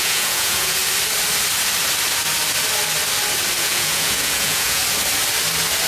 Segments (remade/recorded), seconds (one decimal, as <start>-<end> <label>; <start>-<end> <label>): 0.0-0.8 remade; 0.8-3.6 recorded; 3.6-4.8 remade; 4.8-5.9 recorded